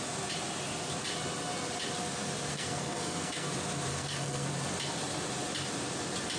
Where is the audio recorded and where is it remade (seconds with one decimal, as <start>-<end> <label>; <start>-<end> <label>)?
0.0-2.5 recorded; 2.5-3.5 remade; 3.5-3.9 recorded; 3.9-4.5 remade; 4.5-6.4 recorded

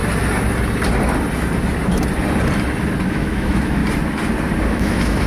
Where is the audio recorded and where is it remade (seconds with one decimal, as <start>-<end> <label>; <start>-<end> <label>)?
0.0-3.1 recorded; 3.1-3.8 remade; 3.8-4.7 recorded; 4.7-5.3 remade

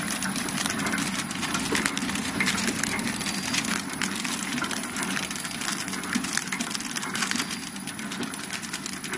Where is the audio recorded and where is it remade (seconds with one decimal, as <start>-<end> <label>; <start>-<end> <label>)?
0.0-9.2 recorded

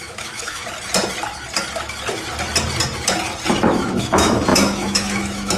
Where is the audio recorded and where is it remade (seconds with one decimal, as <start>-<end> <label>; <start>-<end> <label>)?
0.0-0.6 remade; 0.6-3.7 recorded; 3.7-5.6 remade

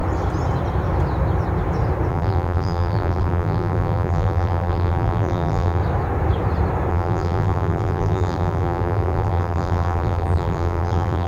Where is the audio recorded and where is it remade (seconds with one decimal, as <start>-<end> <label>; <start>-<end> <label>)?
0.0-2.1 recorded; 2.1-5.8 remade; 5.8-6.9 recorded; 6.9-11.3 remade

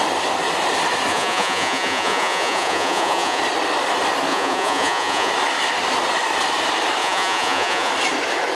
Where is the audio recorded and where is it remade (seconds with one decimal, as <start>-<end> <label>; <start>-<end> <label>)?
0.0-1.1 recorded; 1.1-3.4 remade; 3.4-4.3 recorded; 4.3-5.3 remade; 5.3-7.0 recorded; 7.0-7.9 remade; 7.9-8.5 recorded

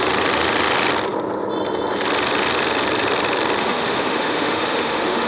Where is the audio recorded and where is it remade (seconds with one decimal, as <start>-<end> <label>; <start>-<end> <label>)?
0.0-3.6 recorded; 3.6-5.3 remade

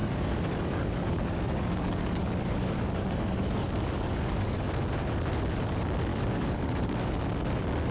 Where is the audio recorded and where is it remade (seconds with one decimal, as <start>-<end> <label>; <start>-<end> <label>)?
0.0-4.7 remade; 4.7-6.1 recorded; 6.1-7.2 remade; 7.2-7.9 recorded